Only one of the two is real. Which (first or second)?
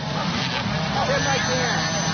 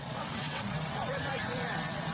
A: first